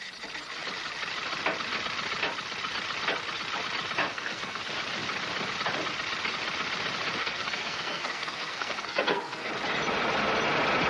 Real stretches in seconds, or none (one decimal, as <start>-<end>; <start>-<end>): 0.0-4.0; 4.6-7.2; 9.5-10.9